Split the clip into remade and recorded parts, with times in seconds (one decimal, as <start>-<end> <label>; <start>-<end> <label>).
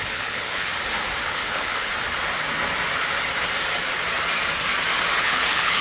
0.0-0.7 remade; 0.7-1.3 recorded; 1.3-1.9 remade; 1.9-5.2 recorded; 5.2-5.8 remade